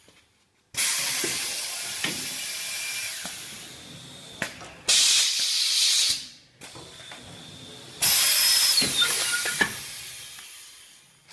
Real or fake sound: real